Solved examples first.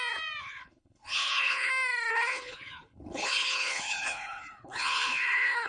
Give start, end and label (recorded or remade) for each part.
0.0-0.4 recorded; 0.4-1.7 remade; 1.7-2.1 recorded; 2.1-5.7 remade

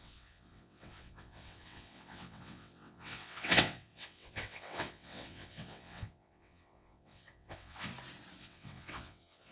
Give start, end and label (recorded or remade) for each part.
0.0-7.9 remade; 7.9-8.4 recorded; 8.4-9.5 remade